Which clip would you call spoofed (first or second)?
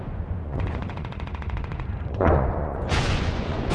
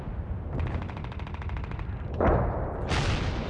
first